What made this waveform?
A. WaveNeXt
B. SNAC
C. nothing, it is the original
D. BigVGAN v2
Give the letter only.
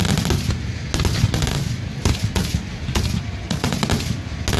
C